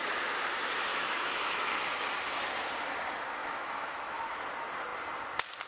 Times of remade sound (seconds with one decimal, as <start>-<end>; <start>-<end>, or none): 0.9-1.7; 3.4-4.4